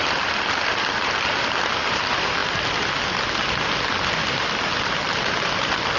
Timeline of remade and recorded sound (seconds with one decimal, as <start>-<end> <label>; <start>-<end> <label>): 0.0-6.0 recorded